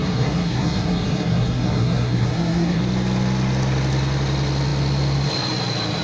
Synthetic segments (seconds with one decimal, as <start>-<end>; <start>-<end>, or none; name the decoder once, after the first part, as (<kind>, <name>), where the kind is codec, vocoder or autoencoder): 0.0-2.8 (codec, SNAC)